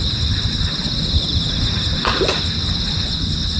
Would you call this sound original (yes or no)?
yes